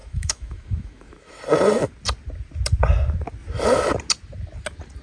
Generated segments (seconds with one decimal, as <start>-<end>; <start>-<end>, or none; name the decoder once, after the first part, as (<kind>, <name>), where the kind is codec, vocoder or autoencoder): 0.0-1.4 (autoencoder, DAC-VAE)